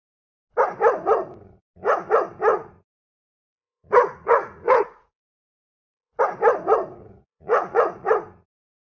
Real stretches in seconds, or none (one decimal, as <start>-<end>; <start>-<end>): 0.0-2.5; 6.2-7.0; 8.1-8.8